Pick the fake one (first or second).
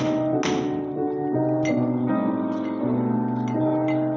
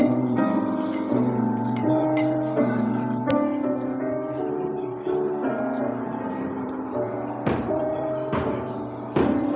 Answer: second